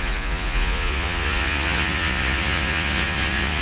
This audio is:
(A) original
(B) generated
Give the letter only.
B